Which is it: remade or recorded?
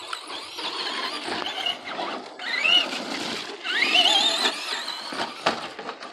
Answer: recorded